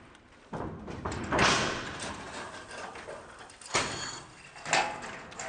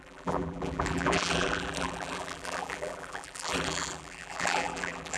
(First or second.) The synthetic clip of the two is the second